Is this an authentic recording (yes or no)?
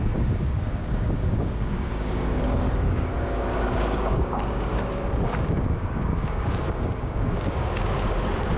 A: no